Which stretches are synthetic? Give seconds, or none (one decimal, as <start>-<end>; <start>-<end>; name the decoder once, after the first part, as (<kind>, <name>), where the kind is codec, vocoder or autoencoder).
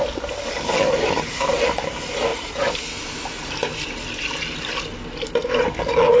2.3-2.9 (vocoder, BigVGAN v2)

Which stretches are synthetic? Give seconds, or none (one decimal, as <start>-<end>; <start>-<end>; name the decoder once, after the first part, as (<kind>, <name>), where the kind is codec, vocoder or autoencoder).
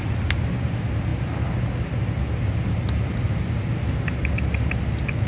none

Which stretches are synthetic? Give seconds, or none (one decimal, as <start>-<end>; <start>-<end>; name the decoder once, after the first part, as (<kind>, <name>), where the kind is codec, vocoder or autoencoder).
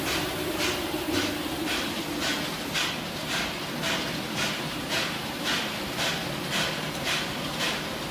3.2-7.6 (vocoder, BigVGAN v2)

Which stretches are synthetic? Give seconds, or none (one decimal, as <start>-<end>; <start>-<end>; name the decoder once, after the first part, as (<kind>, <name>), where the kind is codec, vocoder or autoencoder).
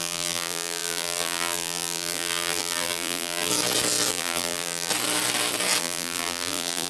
0.0-3.5 (vocoder, BigVGAN v2); 4.1-4.9; 5.8-6.9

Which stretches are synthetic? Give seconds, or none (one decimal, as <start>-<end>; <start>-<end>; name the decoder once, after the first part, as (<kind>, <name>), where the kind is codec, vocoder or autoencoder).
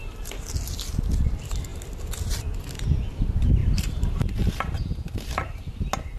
0.0-0.5 (vocoder, BigVGAN v2); 3.6-5.7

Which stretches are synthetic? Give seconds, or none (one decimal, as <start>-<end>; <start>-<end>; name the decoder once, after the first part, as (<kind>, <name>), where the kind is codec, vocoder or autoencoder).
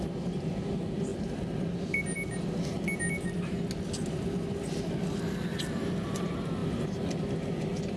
none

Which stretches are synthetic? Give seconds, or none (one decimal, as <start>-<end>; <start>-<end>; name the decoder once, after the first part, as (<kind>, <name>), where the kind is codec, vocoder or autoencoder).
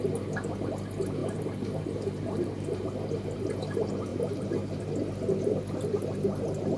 1.2-2.8 (vocoder, BigVGAN v2); 4.1-4.8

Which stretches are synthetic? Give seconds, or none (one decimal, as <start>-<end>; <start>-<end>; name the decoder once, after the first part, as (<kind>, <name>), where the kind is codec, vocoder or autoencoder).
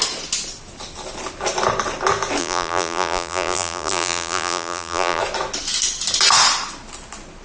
2.4-5.2 (vocoder, BigVGAN v2)